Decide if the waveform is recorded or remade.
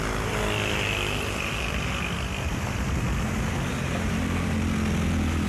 recorded